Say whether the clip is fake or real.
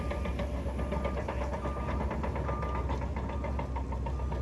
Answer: real